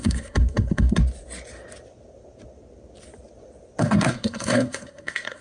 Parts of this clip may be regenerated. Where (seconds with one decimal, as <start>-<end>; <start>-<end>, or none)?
0.0-1.0; 3.8-5.4